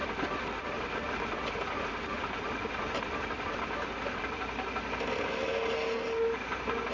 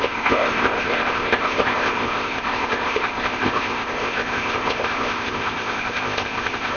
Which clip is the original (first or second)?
first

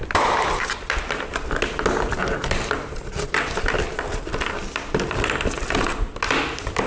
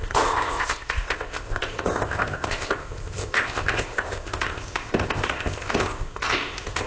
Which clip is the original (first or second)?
first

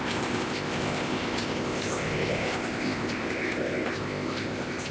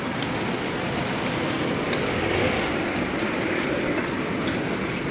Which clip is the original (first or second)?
second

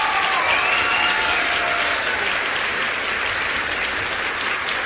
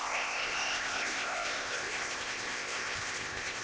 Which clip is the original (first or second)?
first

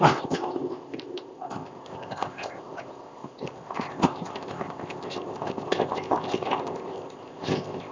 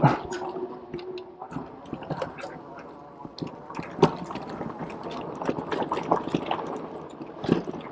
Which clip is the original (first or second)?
second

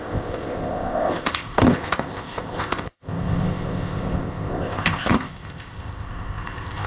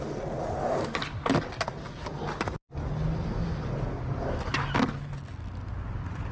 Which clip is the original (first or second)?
second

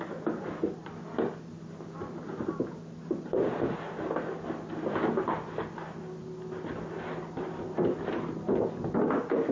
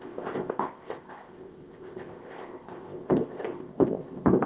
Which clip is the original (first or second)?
first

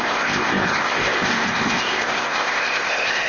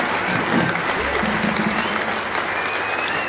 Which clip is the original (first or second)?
second